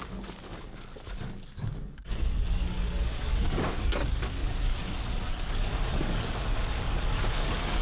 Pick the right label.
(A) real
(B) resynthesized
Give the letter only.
B